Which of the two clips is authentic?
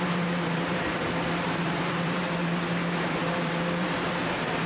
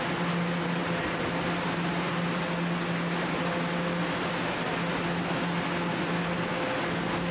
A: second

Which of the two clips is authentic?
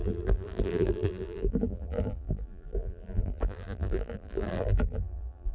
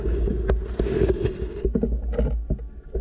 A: second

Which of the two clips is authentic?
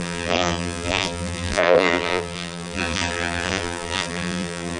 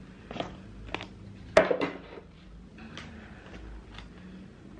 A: second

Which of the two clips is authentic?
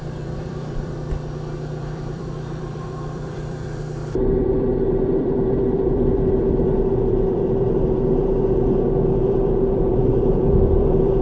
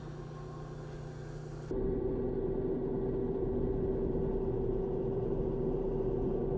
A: second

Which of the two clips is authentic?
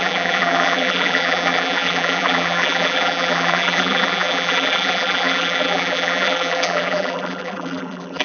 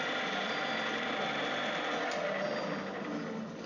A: second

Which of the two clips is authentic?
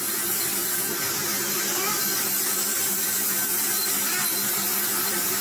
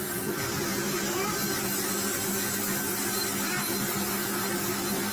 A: second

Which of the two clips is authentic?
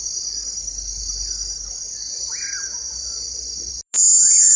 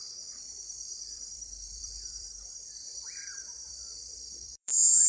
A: first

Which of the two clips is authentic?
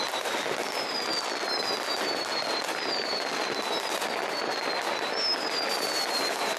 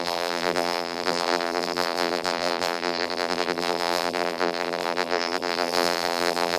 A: first